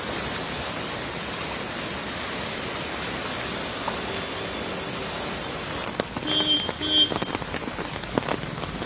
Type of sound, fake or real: real